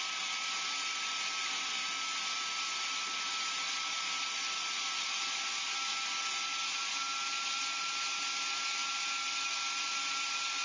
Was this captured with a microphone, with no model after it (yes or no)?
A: yes